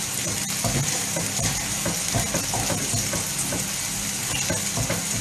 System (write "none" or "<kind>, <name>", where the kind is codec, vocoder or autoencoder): none